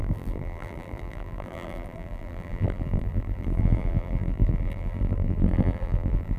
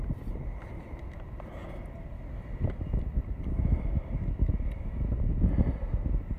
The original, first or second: second